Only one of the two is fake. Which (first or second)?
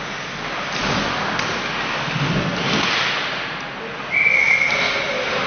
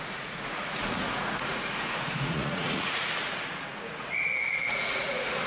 second